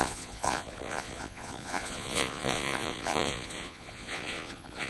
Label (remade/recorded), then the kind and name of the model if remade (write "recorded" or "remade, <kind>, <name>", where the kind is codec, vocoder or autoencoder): remade, vocoder, Vocos